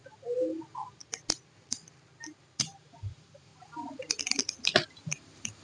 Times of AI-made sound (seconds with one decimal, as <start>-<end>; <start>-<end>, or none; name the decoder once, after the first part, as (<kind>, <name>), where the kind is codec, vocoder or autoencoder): 2.6-3.5 (vocoder, BigVGAN v2); 4.9-5.6